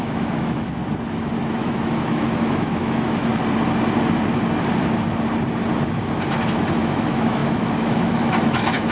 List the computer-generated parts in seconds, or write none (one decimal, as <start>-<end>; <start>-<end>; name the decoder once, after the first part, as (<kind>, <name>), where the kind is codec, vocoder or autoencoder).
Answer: 0.0-0.8 (autoencoder, DAC-VAE); 1.5-3.3; 6.8-8.9

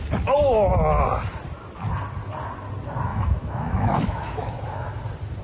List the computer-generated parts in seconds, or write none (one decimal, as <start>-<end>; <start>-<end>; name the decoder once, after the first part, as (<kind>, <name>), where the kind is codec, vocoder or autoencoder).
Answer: 3.1-5.0 (autoencoder, DAC-VAE)

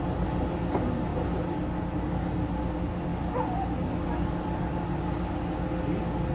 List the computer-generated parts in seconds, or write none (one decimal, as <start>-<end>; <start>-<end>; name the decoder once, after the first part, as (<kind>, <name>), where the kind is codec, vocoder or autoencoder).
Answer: none